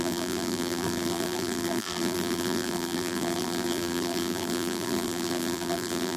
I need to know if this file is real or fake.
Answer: fake